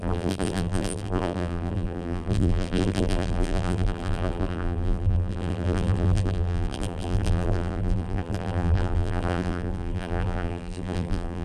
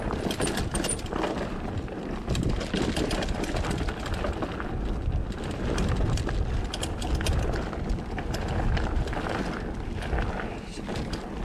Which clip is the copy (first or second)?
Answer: first